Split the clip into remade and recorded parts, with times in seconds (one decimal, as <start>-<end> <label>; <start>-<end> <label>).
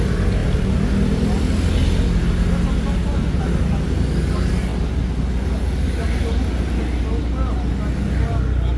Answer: 0.0-8.8 recorded